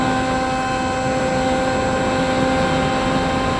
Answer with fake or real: real